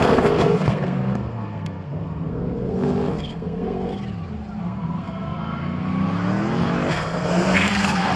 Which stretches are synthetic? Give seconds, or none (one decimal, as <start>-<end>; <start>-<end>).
0.0-3.9; 4.6-5.9; 6.9-8.2